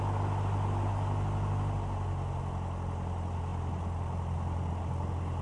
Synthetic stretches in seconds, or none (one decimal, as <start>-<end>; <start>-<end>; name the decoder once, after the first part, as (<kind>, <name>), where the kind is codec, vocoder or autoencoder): none